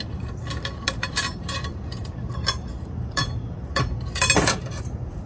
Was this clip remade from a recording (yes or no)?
yes